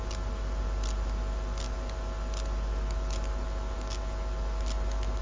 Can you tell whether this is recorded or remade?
recorded